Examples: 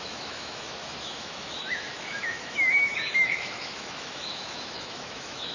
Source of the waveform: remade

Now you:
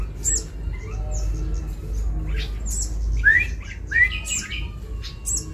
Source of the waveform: recorded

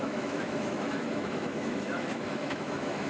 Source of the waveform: remade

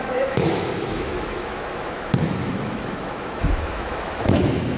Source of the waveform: remade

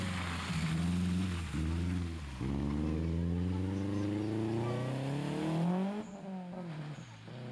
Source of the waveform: recorded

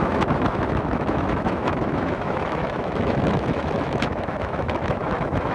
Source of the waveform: remade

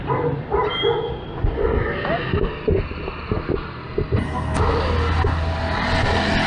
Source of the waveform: recorded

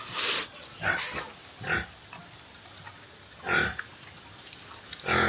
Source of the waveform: recorded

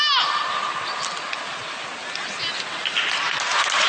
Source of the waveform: recorded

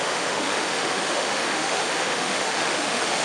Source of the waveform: remade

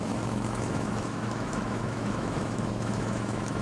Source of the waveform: remade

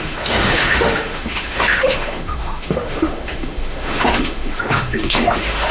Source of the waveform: remade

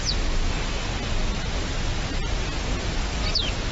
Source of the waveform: recorded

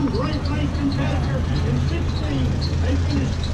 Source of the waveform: recorded